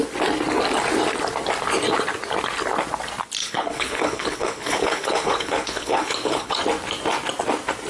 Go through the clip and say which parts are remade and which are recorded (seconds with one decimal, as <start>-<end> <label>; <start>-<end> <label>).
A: 0.0-3.4 recorded; 3.4-6.6 remade; 6.6-7.9 recorded